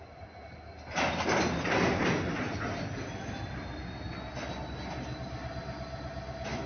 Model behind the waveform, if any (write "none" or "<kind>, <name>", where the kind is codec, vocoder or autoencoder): none